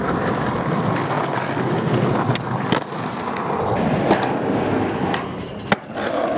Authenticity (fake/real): real